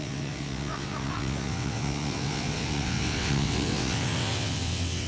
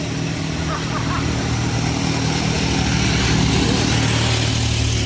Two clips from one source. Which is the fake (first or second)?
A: first